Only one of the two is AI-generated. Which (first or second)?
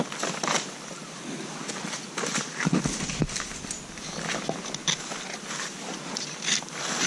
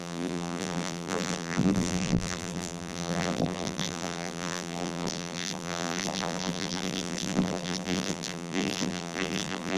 second